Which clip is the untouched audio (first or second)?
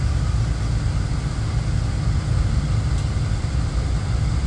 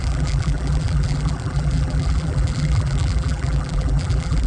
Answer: first